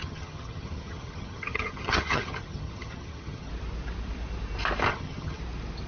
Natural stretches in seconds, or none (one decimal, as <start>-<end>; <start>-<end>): 3.5-4.9; 5.4-5.9